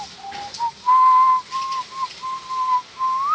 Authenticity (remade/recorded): recorded